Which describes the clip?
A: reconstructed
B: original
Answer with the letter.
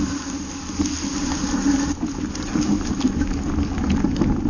B